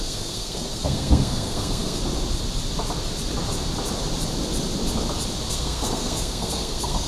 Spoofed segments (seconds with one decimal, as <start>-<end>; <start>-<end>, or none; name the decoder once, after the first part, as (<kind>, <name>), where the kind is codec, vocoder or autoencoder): 0.0-2.0 (codec, SNAC); 5.5-7.1